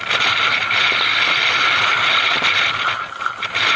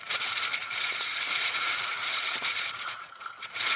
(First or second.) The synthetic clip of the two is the second